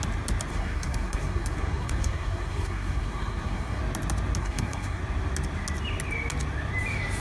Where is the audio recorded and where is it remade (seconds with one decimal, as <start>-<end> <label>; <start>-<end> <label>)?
0.0-0.5 recorded; 0.5-3.8 remade; 3.8-4.4 recorded; 4.4-5.0 remade; 5.0-7.2 recorded